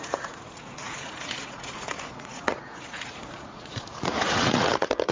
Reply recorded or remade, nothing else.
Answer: remade